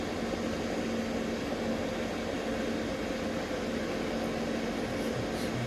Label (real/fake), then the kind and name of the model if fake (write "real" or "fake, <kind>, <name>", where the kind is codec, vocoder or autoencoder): real